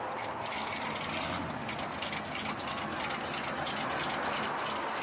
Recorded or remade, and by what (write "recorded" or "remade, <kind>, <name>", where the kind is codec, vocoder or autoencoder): recorded